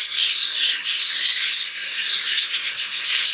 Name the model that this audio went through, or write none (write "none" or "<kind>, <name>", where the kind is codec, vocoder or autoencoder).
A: codec, SNAC